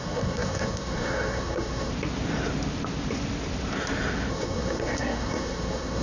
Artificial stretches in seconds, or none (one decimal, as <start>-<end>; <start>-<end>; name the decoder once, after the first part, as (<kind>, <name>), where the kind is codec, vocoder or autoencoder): 0.0-1.9 (codec, SNAC); 4.3-6.0